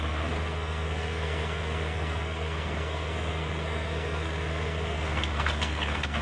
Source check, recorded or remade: remade